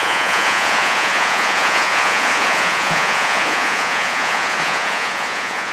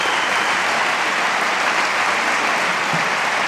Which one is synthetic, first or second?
first